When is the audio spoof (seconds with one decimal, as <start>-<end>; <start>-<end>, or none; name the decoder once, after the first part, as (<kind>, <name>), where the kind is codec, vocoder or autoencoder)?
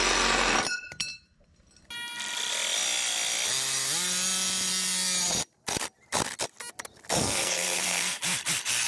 7.2-8.2 (codec, SNAC)